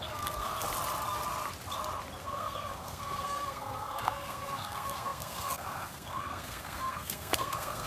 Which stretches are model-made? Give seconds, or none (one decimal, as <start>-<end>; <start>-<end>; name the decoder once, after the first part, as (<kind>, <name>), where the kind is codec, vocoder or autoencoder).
0.0-0.5 (codec, SNAC); 2.2-7.9